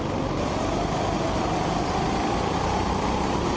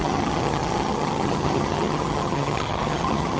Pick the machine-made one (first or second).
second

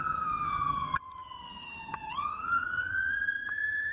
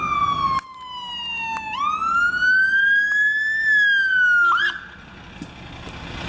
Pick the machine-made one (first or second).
first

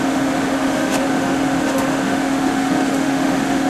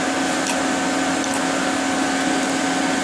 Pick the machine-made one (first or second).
first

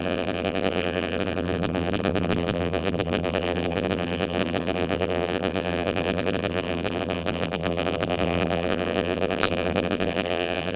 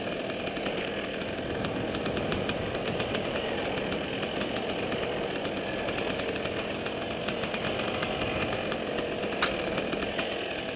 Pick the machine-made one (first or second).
first